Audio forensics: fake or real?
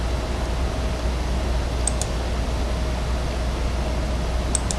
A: real